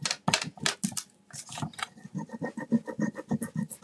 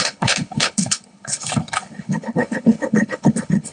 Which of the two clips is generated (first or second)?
second